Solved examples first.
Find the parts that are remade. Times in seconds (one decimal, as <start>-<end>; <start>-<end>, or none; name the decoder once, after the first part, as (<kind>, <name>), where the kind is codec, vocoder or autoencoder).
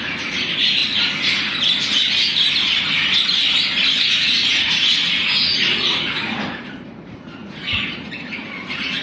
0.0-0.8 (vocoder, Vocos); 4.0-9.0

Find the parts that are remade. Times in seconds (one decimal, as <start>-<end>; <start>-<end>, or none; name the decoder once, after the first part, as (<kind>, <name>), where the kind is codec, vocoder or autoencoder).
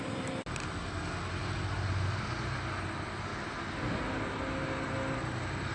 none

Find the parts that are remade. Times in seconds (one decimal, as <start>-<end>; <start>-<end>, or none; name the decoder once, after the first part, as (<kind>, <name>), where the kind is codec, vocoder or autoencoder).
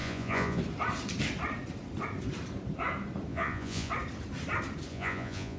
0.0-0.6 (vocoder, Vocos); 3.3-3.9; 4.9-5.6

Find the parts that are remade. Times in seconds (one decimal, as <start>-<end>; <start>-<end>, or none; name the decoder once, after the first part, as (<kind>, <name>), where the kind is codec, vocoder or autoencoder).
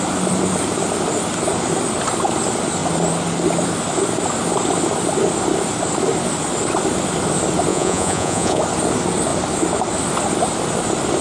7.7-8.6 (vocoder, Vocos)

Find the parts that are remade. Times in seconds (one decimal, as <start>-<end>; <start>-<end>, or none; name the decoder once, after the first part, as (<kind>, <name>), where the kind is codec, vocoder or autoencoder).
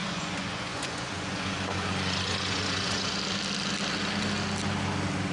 0.0-3.2 (vocoder, Vocos)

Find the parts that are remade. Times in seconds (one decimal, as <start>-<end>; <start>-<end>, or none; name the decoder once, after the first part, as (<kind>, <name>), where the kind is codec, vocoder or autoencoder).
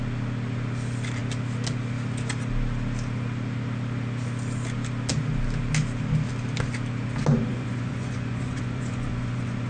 7.5-9.7 (vocoder, Vocos)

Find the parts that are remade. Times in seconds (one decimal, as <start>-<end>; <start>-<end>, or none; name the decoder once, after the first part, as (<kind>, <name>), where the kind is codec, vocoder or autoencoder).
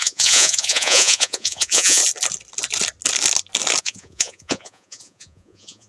0.0-2.0 (vocoder, Vocos); 3.8-5.9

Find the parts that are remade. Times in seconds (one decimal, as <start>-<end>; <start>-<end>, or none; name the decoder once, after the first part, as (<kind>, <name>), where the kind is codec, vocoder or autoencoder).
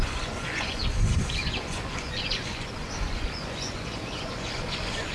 0.0-5.1 (vocoder, Vocos)